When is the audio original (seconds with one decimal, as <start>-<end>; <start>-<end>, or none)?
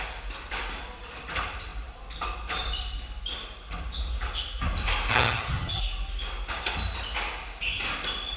0.0-5.1; 5.8-8.4